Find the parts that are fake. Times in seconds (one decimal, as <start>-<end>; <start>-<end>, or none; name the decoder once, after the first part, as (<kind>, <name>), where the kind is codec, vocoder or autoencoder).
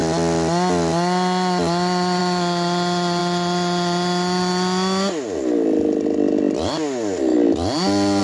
none